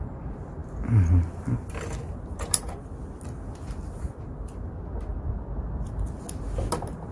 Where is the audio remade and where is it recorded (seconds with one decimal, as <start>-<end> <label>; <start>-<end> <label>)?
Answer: 0.0-7.1 recorded

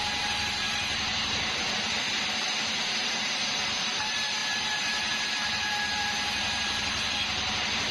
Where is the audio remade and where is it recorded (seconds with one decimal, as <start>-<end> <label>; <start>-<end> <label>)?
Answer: 0.0-7.9 remade